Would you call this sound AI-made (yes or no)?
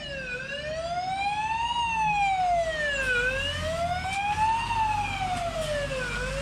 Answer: no